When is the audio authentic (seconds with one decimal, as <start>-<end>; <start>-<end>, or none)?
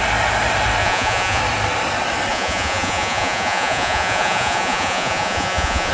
0.0-0.8; 1.4-2.3